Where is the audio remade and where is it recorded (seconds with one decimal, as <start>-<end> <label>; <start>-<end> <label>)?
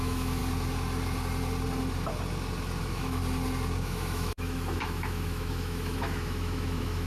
0.0-0.4 remade; 0.4-2.8 recorded; 2.8-3.2 remade; 3.2-3.8 recorded; 3.8-7.1 remade